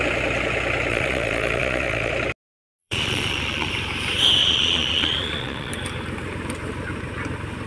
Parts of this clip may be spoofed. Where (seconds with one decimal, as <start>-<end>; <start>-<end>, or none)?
0.9-2.1; 2.8-3.7; 4.4-5.7